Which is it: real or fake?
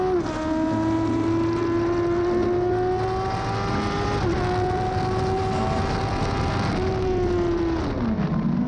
real